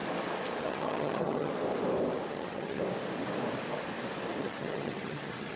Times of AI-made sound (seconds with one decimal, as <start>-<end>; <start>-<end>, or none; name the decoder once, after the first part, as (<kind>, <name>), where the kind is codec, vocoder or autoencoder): 0.6-1.5 (vocoder, HiFi-GAN); 2.3-2.8; 4.4-5.6